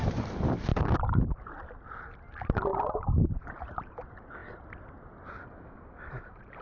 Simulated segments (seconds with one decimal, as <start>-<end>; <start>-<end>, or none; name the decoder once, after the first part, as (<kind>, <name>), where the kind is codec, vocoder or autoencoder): 0.7-1.7 (vocoder, BigVGAN v2)